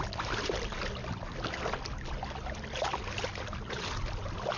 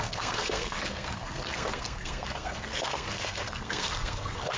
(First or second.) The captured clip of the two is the first